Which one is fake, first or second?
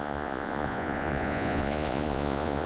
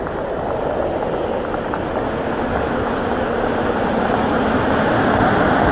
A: first